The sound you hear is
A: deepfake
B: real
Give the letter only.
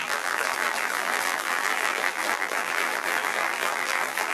A